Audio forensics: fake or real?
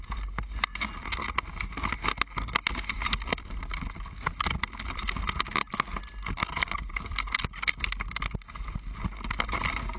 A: real